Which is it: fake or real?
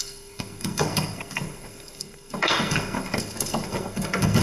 fake